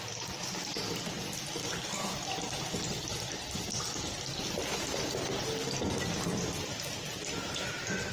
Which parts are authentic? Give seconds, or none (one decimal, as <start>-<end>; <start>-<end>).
0.0-1.6; 2.1-8.1